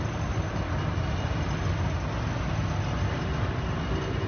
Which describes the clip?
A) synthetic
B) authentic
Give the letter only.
B